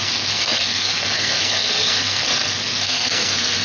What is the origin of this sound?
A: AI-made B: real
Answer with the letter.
A